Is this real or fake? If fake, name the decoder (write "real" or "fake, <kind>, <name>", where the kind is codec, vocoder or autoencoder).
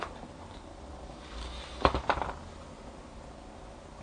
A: real